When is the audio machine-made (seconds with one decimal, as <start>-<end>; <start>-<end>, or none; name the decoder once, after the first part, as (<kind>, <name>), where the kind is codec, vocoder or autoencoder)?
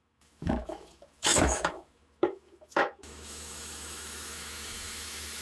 0.0-5.4 (autoencoder, DAC-VAE)